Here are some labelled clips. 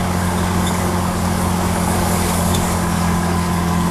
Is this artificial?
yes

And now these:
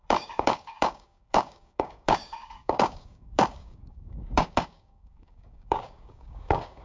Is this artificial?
yes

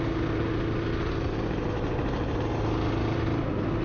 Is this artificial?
no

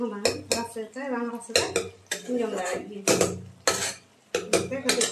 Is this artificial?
no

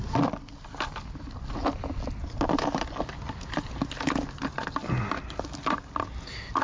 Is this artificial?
no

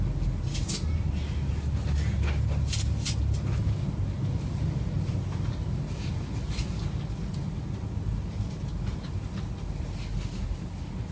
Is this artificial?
no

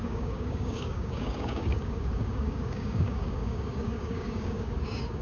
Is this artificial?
yes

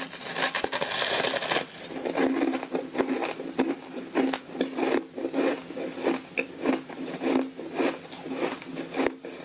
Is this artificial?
no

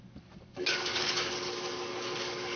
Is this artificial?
yes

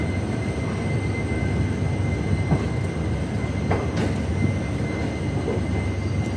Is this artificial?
no